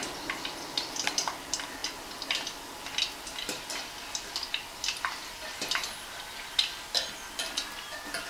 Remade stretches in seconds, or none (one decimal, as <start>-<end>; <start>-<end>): none